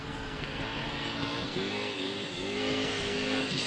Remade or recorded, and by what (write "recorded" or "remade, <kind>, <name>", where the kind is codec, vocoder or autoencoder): remade, codec, SNAC